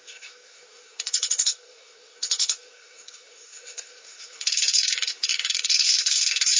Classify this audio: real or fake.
fake